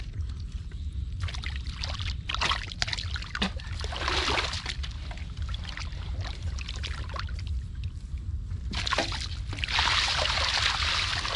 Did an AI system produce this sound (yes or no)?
no